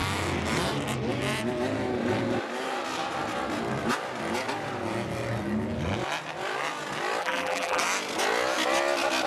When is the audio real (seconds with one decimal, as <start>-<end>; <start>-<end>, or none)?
0.0-7.2; 7.8-9.3